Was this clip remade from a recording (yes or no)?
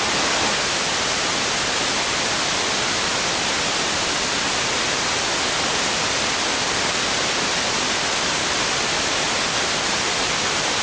no